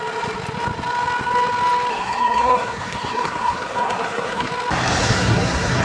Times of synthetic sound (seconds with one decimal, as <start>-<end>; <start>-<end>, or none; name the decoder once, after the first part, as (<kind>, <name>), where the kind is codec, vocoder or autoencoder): 1.9-4.5 (codec, SNAC); 5.0-5.8